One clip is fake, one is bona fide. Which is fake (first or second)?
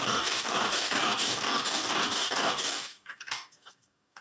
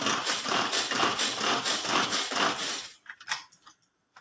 first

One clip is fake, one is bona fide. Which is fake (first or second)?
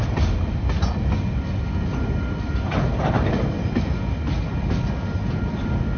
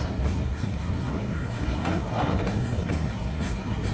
second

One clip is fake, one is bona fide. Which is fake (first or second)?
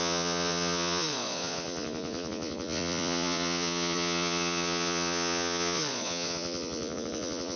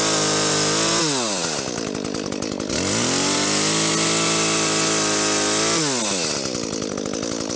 first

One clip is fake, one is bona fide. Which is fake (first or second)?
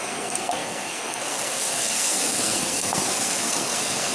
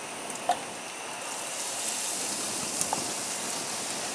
first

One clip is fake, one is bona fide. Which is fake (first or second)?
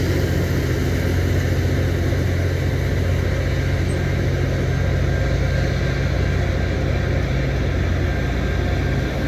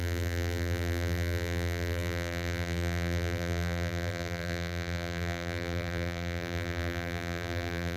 second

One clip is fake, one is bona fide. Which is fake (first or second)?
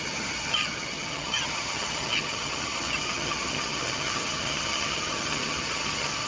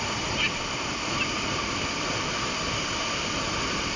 first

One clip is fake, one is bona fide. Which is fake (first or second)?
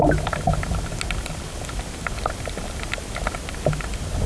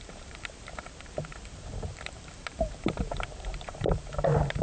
second